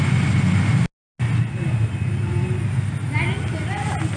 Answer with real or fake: real